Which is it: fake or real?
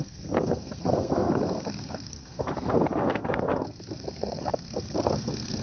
fake